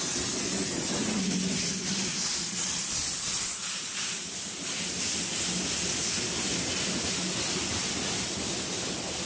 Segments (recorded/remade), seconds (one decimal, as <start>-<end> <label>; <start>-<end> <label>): 0.0-9.3 recorded